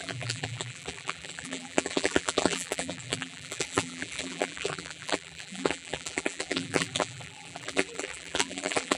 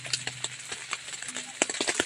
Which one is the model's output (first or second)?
first